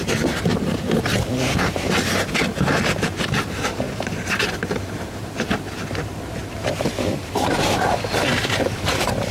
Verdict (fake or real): fake